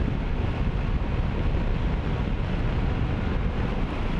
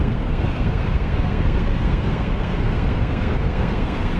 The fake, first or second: second